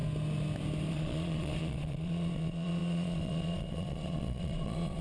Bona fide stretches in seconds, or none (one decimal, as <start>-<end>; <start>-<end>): 0.0-0.9